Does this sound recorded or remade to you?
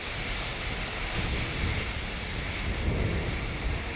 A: recorded